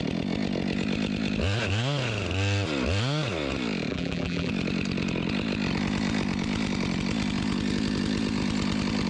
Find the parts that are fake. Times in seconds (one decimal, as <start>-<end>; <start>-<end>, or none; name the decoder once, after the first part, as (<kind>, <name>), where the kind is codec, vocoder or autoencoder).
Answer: 3.9-4.5 (vocoder, BigVGAN v2)